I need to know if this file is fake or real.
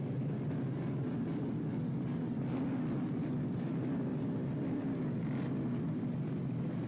real